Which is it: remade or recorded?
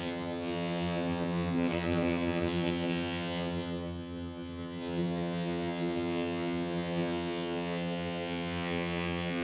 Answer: remade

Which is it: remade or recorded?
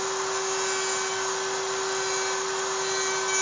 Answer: recorded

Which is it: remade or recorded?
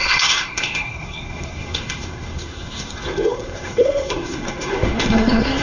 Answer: remade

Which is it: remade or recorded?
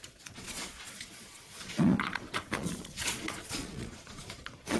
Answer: remade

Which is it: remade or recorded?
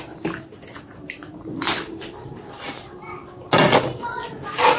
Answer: recorded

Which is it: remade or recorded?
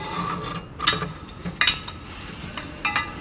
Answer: recorded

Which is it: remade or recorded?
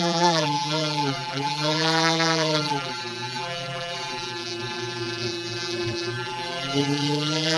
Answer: remade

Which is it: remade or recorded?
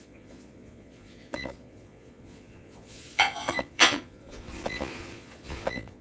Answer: remade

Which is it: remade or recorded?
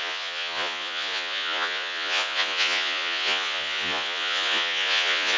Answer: remade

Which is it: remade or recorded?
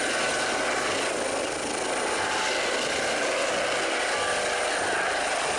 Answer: recorded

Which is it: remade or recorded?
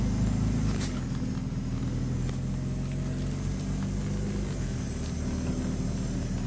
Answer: recorded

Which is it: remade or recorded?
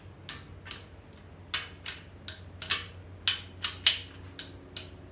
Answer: recorded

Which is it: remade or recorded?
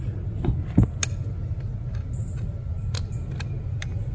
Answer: recorded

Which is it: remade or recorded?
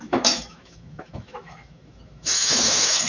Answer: remade